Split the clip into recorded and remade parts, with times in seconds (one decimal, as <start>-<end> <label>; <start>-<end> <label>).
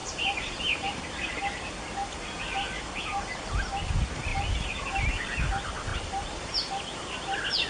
0.0-1.7 remade; 1.7-4.3 recorded; 4.3-4.9 remade; 4.9-5.9 recorded; 5.9-6.7 remade; 6.7-7.7 recorded